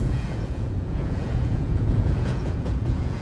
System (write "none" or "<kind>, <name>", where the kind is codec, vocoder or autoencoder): vocoder, Vocos